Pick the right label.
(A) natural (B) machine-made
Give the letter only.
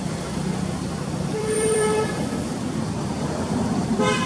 B